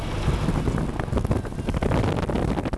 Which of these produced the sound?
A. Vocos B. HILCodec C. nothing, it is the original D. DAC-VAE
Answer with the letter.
C